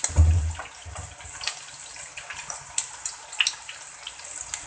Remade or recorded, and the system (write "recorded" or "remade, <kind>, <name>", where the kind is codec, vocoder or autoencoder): recorded